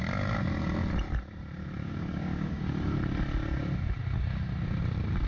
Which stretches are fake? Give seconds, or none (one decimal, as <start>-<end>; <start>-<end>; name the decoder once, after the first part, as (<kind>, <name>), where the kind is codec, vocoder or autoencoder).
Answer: 1.8-2.7 (codec, DAC)